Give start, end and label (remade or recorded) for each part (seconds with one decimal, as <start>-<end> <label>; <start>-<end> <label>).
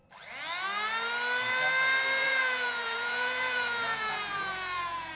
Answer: 0.0-2.2 recorded; 2.2-5.1 remade